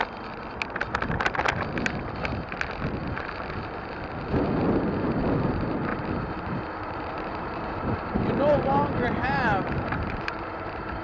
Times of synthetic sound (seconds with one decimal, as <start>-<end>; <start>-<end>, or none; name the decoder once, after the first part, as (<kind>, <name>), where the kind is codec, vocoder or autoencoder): 5.9-11.0 (vocoder, BigVGAN v2)